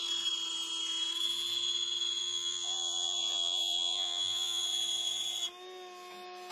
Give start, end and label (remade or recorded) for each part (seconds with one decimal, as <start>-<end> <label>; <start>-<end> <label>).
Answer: 0.0-2.2 recorded; 2.2-4.6 remade; 4.6-6.5 recorded